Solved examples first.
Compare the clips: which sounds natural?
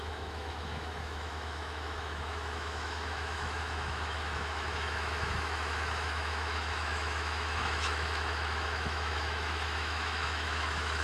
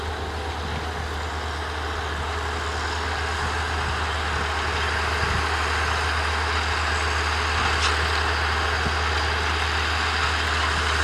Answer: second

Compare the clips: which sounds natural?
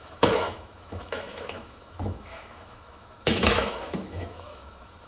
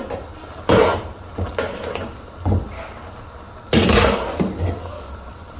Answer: second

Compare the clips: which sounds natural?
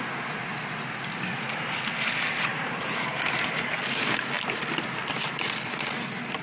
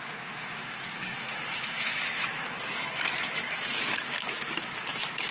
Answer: first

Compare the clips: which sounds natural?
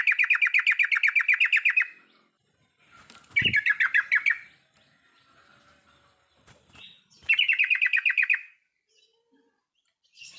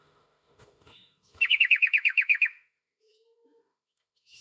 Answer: first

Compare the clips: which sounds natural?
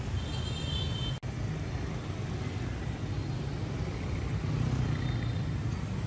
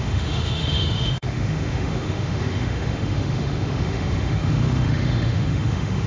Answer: first